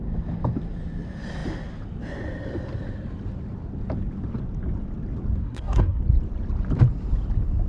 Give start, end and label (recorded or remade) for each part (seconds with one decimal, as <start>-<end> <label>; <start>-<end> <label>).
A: 0.0-5.4 recorded; 5.4-6.0 remade; 6.0-7.7 recorded